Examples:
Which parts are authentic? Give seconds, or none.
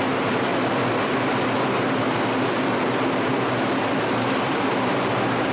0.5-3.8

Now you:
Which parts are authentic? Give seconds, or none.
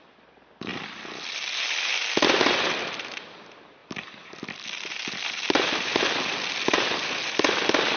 0.0-0.7; 2.0-3.8; 6.0-8.0